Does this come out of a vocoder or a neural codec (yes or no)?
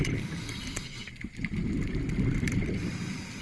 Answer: no